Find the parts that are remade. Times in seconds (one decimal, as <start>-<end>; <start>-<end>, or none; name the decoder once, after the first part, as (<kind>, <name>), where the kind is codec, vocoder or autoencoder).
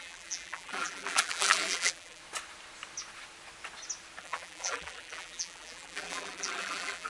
0.0-2.2 (vocoder, BigVGAN v2); 4.2-7.1